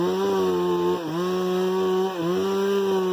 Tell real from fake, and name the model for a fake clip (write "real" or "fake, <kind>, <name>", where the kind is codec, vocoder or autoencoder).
real